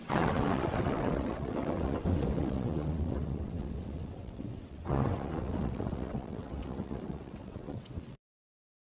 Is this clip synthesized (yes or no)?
yes